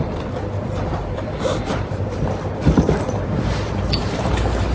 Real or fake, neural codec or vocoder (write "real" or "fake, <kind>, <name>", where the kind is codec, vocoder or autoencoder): fake, vocoder, BigVGAN v2